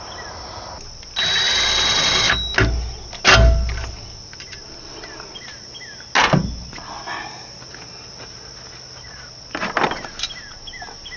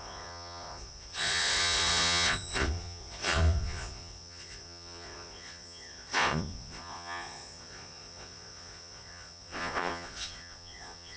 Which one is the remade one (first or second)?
second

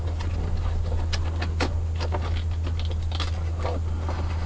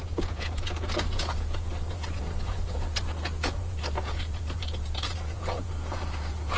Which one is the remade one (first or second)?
second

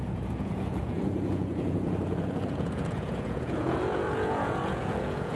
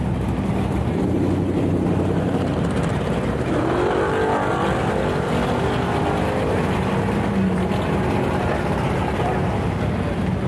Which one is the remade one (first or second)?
first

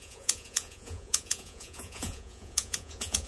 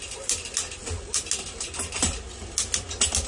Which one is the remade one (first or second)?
first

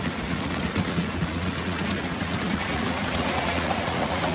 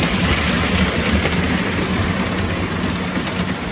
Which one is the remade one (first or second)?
first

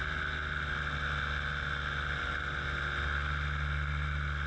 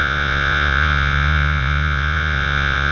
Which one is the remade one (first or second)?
second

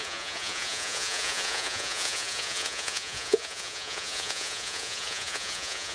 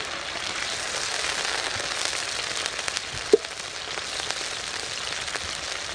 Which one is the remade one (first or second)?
first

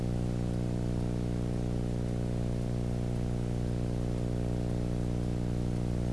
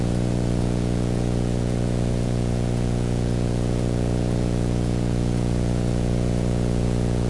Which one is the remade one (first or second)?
second